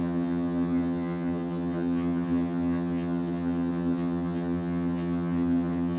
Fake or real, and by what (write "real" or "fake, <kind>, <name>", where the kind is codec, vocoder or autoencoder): fake, vocoder, HiFi-GAN